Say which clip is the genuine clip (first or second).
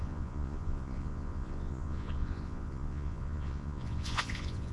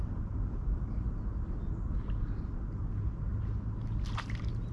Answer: second